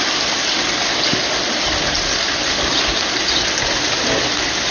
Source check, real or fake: real